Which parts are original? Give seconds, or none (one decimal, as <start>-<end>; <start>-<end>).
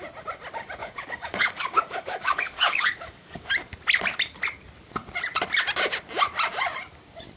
0.0-0.8; 3.5-7.4